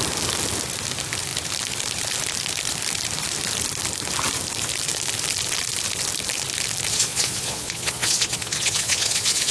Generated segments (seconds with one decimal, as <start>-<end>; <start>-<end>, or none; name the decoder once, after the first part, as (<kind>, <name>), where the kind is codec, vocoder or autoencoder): 6.9-9.5 (vocoder, Vocos)